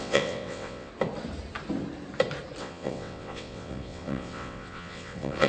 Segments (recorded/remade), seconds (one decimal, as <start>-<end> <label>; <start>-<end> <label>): 0.0-0.9 remade; 0.9-2.6 recorded; 2.6-5.5 remade